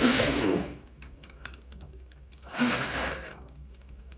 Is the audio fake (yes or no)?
yes